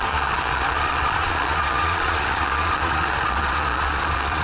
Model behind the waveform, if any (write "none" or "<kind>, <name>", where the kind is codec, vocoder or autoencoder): vocoder, Vocos